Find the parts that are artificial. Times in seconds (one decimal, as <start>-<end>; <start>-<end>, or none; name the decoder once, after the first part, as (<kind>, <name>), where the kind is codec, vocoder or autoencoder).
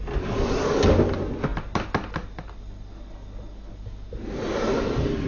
none